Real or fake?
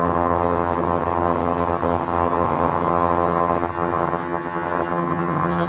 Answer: fake